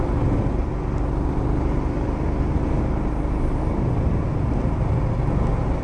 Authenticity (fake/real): real